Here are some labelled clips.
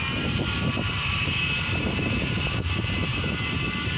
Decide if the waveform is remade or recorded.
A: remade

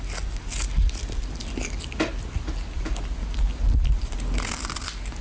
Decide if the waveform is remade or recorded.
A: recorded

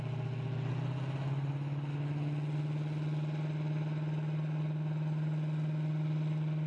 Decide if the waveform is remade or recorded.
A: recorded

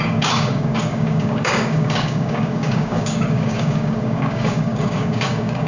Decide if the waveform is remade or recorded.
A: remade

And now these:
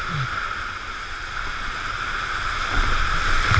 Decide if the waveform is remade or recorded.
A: recorded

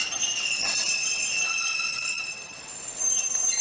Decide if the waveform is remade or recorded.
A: remade